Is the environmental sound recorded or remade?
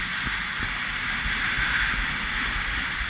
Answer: recorded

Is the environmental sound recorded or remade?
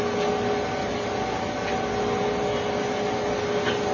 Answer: recorded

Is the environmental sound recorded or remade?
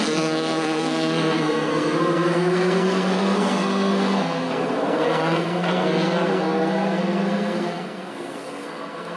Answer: remade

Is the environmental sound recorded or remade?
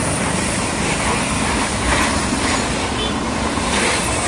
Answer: recorded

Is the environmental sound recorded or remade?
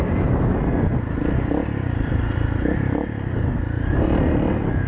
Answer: recorded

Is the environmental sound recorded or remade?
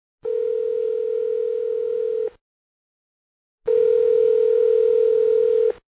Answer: remade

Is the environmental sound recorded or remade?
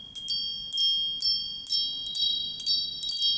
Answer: recorded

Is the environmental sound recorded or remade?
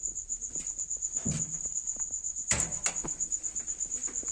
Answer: recorded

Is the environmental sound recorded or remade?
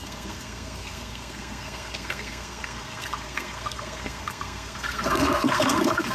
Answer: remade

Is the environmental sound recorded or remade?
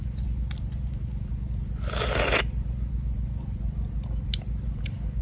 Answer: recorded